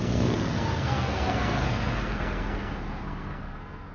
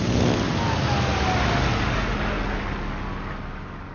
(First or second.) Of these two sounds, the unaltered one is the second